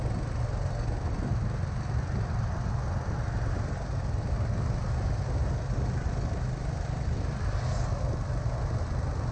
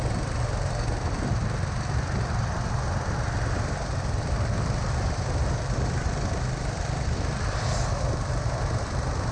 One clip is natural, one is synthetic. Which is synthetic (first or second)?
second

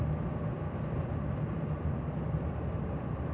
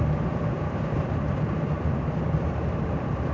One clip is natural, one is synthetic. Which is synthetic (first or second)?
second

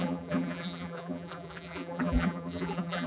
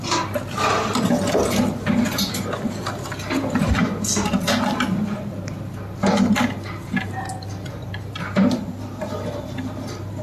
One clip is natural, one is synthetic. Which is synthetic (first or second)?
first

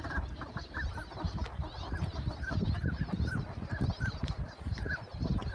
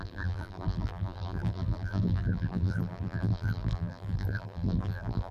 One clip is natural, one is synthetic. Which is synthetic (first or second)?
second